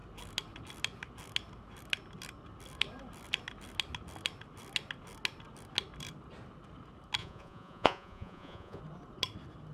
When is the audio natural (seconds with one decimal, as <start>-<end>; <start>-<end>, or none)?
0.0-7.2; 8.8-9.7